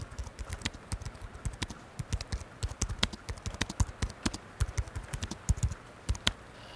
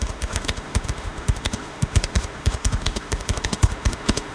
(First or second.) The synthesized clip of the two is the second